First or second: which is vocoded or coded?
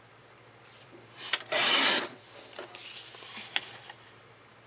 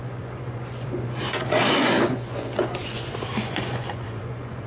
second